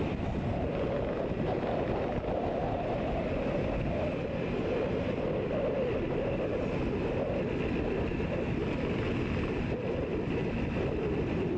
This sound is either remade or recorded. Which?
recorded